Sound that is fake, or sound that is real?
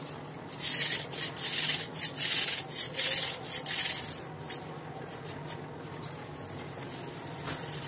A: real